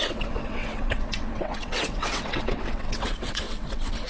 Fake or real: fake